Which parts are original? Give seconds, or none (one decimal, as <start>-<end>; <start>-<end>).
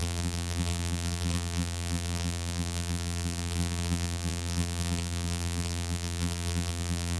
none